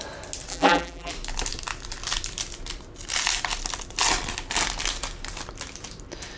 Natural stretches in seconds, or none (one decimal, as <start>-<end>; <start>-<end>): 0.0-0.5; 1.1-6.4